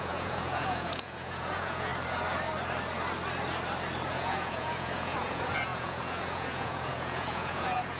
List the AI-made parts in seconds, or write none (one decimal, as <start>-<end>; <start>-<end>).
0.0-1.9; 4.1-8.0

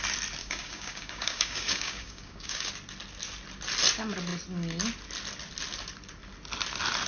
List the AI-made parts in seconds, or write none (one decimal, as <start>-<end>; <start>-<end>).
0.4-2.7

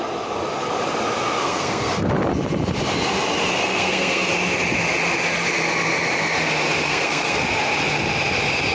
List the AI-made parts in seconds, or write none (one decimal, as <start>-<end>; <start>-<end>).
1.4-2.1; 3.6-4.3; 6.9-7.4